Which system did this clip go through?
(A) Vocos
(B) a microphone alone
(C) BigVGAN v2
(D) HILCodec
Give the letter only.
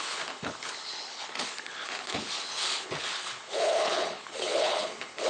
D